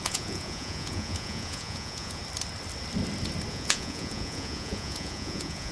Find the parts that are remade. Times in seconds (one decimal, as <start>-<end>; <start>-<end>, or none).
0.0-2.2; 3.5-5.7